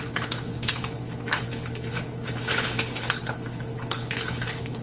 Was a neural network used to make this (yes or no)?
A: yes